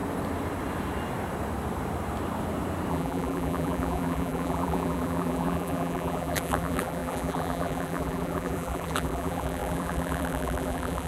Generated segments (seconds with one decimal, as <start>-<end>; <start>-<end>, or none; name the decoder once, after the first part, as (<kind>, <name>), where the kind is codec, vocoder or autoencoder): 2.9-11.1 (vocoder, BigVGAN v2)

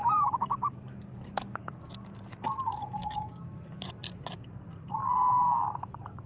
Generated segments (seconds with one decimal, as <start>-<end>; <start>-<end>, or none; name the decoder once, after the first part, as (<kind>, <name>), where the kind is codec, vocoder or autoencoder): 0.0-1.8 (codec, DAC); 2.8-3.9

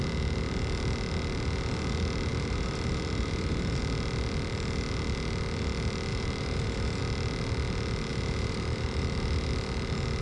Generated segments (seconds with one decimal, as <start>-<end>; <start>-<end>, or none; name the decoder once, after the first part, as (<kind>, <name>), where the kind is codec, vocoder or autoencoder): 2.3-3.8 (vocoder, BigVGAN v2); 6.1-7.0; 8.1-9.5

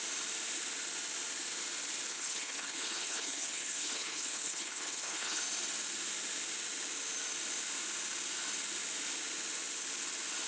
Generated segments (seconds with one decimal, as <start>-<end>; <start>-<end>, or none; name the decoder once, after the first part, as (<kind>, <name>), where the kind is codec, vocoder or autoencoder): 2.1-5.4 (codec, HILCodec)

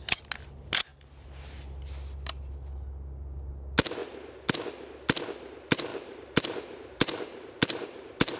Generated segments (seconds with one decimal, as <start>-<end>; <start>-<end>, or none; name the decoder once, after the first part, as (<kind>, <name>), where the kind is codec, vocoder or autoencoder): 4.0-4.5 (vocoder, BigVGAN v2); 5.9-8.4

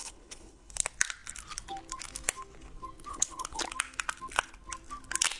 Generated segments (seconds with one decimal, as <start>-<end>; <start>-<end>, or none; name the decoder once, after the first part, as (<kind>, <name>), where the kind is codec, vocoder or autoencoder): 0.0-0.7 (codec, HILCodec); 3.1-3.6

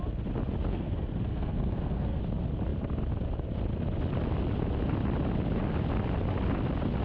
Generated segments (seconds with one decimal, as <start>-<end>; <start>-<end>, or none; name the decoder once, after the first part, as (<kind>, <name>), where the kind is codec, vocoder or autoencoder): 0.7-2.2 (codec, SNAC)